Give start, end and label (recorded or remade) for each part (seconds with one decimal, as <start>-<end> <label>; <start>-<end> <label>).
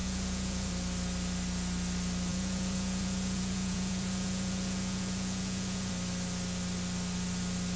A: 0.0-0.7 remade; 0.7-2.3 recorded; 2.3-5.9 remade; 5.9-7.8 recorded